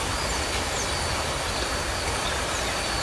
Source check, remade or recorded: remade